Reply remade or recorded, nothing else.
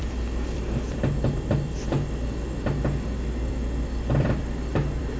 remade